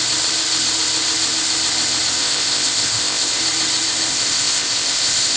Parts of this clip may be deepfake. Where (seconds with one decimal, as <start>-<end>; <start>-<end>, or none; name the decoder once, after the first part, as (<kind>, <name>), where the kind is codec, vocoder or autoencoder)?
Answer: 2.2-3.4 (codec, ZipCodec); 4.1-5.4